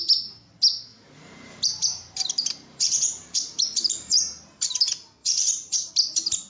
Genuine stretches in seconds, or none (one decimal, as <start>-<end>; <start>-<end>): 0.0-0.9; 4.8-5.2; 5.9-6.5